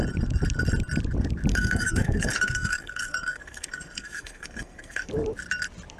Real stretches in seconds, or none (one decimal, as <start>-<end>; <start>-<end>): 0.0-1.5; 5.1-6.0